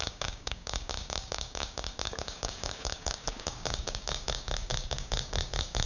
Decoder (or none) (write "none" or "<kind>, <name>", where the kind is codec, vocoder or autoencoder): codec, DAC